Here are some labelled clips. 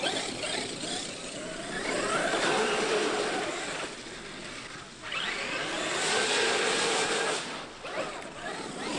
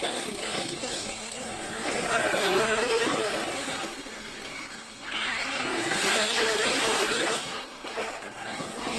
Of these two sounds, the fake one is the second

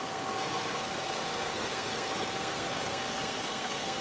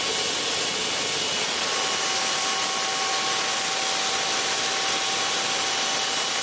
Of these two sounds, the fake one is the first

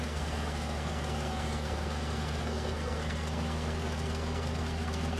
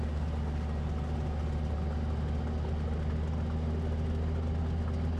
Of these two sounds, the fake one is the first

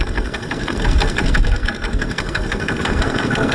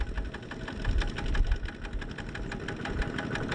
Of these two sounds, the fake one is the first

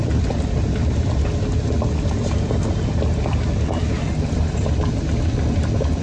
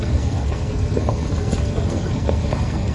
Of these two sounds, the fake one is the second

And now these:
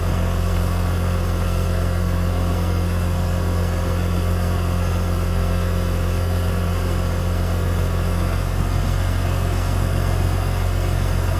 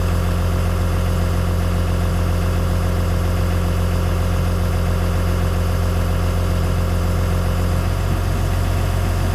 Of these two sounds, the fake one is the first